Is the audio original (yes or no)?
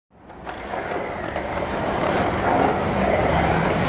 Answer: yes